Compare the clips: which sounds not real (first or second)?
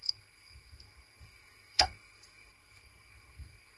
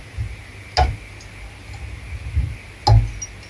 first